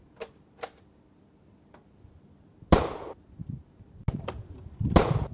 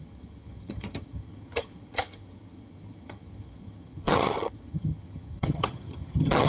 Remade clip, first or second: second